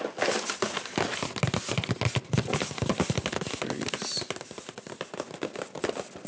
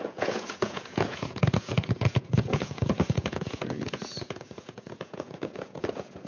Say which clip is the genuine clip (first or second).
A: first